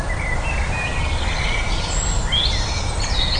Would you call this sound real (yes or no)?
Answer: yes